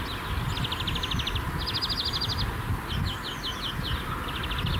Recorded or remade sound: recorded